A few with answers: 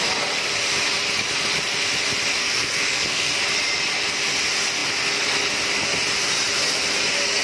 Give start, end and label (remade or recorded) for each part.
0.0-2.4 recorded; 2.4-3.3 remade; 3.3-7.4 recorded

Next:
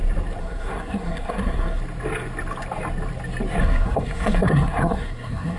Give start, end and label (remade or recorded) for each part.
0.0-0.4 recorded; 0.4-1.8 remade; 1.8-3.6 recorded; 3.6-5.6 remade

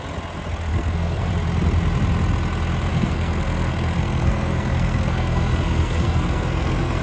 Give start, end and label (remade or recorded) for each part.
0.0-0.7 recorded; 0.7-1.3 remade; 1.3-2.9 recorded; 2.9-7.0 remade

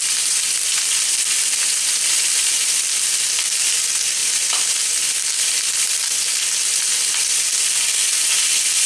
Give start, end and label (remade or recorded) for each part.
0.0-8.9 recorded

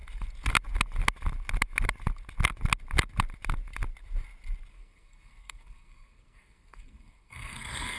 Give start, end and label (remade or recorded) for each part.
0.0-4.7 recorded; 4.7-8.0 remade